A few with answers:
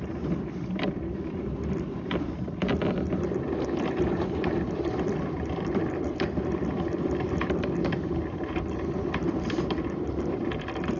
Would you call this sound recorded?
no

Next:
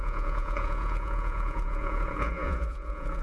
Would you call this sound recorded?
no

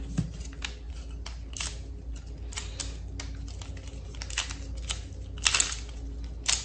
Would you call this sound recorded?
yes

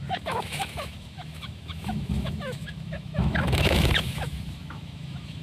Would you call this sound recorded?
no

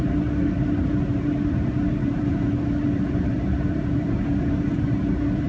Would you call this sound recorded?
no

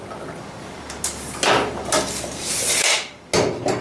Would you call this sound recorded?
yes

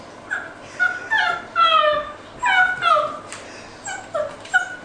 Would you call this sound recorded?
yes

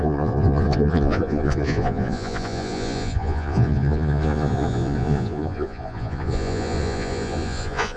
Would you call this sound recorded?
no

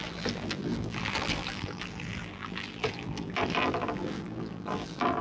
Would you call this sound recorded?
no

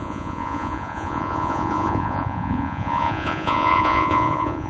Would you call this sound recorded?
no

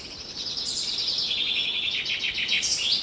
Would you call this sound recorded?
yes